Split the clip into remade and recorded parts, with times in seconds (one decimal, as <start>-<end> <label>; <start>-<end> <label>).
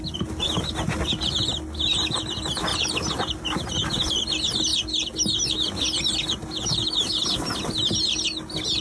0.0-8.8 recorded